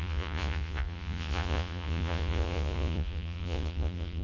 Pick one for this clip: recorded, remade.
remade